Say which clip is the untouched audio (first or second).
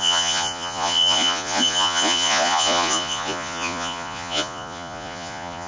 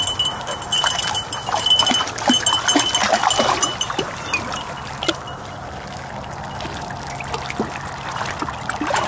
second